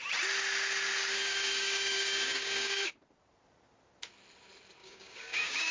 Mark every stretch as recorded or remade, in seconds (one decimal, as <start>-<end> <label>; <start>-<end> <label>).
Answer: 0.0-1.0 recorded; 1.0-2.9 remade; 2.9-4.8 recorded; 4.8-5.7 remade